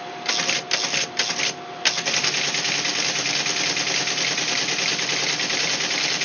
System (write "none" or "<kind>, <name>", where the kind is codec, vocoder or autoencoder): none